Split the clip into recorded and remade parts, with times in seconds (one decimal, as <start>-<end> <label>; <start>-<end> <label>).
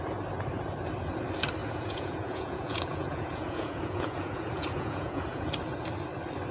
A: 0.0-1.6 recorded; 1.6-5.5 remade; 5.5-6.5 recorded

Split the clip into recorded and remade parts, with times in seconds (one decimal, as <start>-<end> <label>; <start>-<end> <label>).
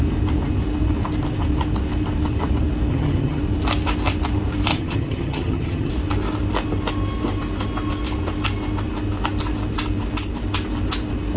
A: 0.0-2.9 recorded; 2.9-3.4 remade; 3.4-4.7 recorded; 4.7-5.9 remade; 5.9-11.4 recorded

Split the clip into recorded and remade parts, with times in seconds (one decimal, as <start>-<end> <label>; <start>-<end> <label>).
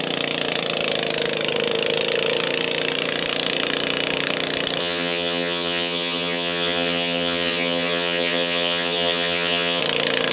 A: 0.0-4.8 recorded; 4.8-9.8 remade; 9.8-10.3 recorded